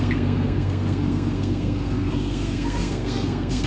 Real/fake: fake